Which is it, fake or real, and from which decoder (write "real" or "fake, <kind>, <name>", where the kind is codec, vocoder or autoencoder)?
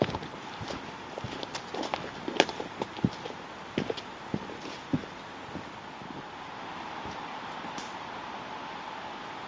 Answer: real